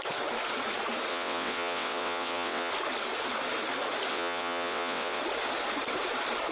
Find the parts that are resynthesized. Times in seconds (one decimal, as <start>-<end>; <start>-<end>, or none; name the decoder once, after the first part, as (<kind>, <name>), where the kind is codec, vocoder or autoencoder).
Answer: 1.1-2.7 (vocoder, WaveNeXt); 4.1-5.2